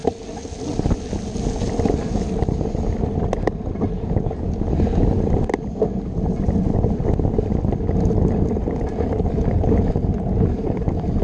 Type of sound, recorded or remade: recorded